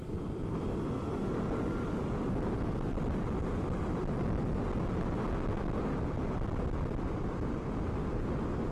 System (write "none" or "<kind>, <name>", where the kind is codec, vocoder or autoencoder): none